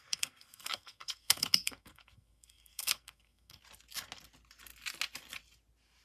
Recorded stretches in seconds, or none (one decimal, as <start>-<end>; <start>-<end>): 3.6-6.0